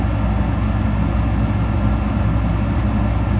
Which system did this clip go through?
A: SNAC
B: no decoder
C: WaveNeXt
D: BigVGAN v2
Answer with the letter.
B